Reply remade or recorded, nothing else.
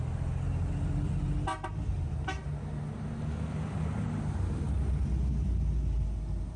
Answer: recorded